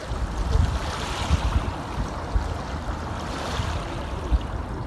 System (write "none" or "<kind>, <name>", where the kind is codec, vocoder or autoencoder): none